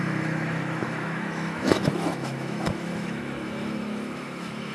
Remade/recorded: remade